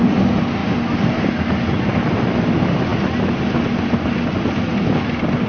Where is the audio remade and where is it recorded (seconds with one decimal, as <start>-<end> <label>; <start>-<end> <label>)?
0.0-5.5 recorded